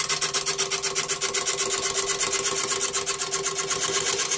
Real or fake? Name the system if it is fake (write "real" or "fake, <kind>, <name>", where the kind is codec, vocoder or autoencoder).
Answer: real